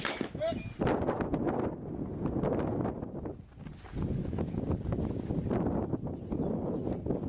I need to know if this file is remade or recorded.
recorded